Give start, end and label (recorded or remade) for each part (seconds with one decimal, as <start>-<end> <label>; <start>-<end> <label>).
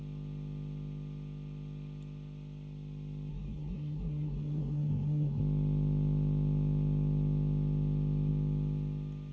0.0-3.3 recorded; 3.3-5.4 remade; 5.4-9.3 recorded